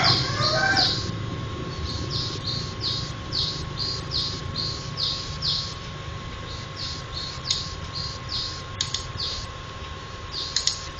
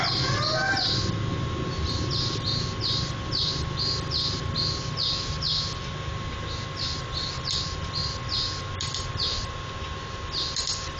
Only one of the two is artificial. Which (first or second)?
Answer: first